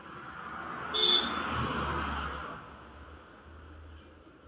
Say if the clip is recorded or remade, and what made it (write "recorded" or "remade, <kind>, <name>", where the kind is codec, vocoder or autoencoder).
recorded